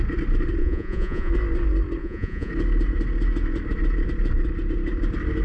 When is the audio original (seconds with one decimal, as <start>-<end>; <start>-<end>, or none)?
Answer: 0.0-0.6; 1.3-2.0; 2.5-5.4